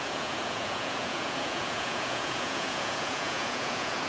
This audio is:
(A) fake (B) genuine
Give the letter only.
A